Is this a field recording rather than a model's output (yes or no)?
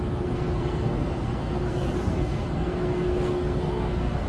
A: no